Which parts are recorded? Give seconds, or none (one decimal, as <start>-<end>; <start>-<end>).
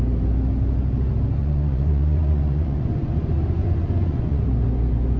0.0-1.4; 3.1-3.6; 4.4-5.2